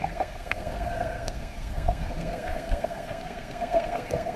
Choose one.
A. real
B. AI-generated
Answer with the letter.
B